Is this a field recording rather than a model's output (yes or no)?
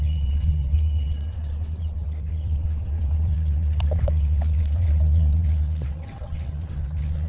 no